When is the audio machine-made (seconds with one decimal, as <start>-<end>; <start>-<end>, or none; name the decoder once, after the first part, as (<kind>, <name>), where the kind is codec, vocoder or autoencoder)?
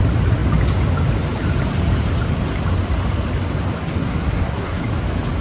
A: 4.0-4.8 (codec, SNAC)